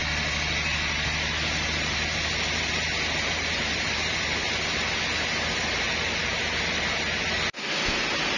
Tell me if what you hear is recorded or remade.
recorded